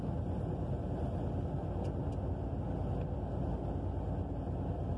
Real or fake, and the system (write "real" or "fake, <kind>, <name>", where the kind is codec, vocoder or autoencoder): real